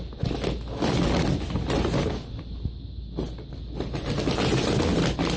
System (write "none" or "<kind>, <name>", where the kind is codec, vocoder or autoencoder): none